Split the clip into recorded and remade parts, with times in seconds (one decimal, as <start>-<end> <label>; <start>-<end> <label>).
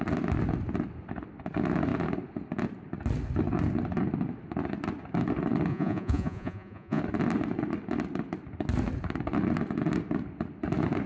0.0-5.7 recorded; 5.7-7.0 remade; 7.0-11.1 recorded